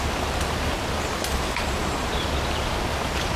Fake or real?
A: real